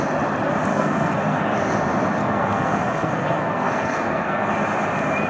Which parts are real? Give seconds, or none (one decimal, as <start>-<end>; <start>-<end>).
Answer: 0.0-0.7; 1.4-2.2; 4.5-5.3

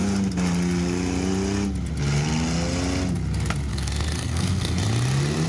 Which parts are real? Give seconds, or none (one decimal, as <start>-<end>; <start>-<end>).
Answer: 0.0-3.7; 4.8-5.5

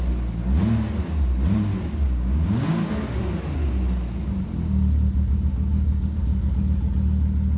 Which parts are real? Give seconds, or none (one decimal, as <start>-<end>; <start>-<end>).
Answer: 0.0-1.7; 2.9-5.5; 6.2-7.6

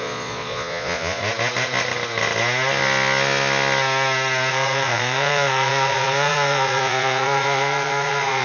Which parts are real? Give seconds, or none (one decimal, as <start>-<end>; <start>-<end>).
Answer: 1.2-4.5

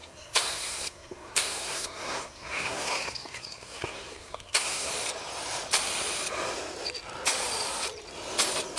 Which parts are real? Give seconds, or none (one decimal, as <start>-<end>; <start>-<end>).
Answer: 4.9-8.8

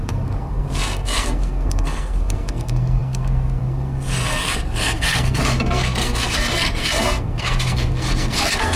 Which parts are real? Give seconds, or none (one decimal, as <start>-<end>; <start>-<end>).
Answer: none